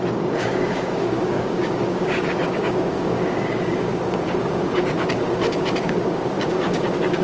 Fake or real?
fake